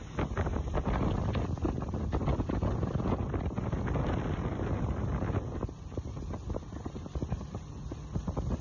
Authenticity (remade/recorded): recorded